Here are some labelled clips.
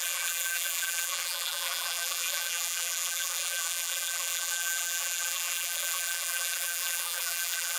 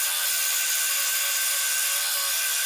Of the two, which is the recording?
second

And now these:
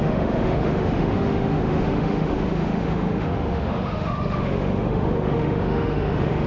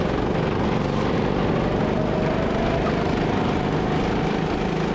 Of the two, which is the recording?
second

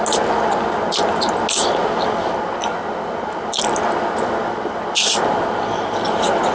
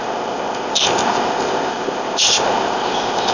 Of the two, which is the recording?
first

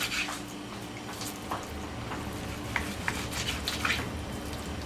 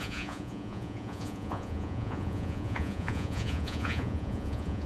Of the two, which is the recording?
first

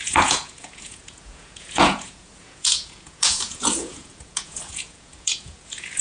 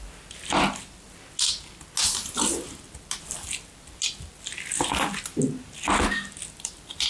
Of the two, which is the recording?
second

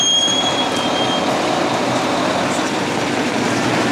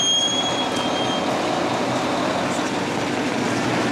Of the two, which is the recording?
second